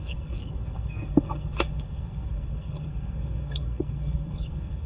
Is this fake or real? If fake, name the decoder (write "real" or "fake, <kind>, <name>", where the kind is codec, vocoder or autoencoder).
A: fake, codec, SNAC